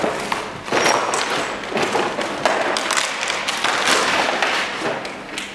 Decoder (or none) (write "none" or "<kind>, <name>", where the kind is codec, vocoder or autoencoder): none